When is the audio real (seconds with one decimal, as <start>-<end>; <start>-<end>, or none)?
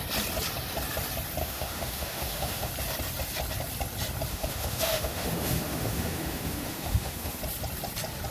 0.0-1.4; 2.7-4.3; 7.4-8.3